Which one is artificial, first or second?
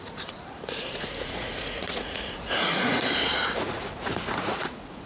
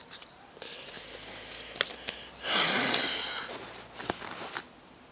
first